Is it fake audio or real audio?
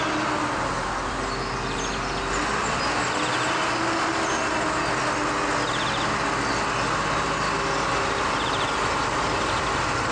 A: real